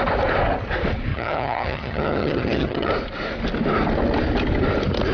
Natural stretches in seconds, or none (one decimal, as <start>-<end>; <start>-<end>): 0.0-1.1; 2.9-5.1